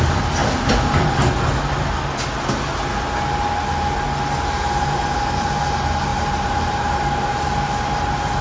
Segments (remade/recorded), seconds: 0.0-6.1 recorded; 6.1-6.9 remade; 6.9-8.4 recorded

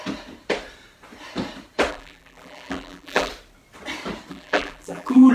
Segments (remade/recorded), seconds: 0.0-1.9 recorded; 1.9-3.3 remade; 3.3-4.3 recorded; 4.3-5.3 remade